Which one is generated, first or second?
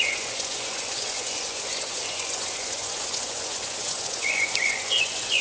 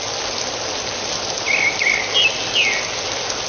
first